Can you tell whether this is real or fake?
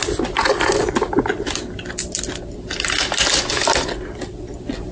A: real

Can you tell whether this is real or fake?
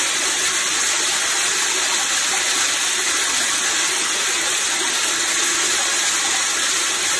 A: real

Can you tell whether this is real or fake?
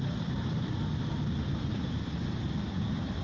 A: real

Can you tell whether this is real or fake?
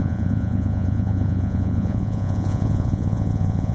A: fake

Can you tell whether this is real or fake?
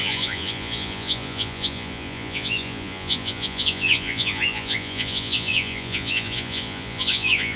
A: fake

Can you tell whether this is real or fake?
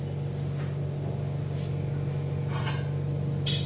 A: real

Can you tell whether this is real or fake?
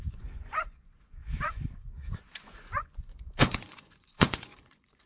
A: fake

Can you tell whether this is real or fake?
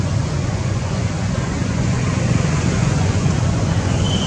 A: fake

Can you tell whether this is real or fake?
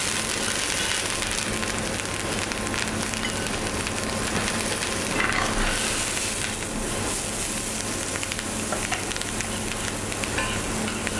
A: real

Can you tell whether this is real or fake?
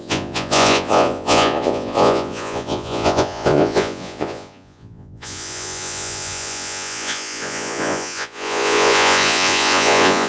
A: fake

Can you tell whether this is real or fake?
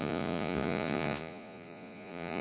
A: fake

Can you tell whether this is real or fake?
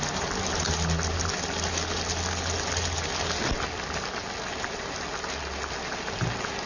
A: real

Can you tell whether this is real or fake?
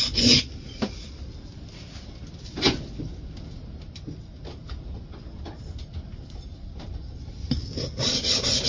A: real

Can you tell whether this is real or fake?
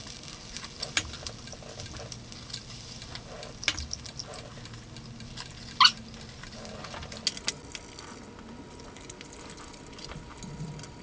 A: real